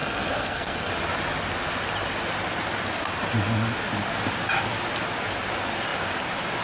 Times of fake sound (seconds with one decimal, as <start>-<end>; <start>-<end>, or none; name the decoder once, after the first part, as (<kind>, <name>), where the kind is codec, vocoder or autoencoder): 0.0-0.9 (codec, SNAC)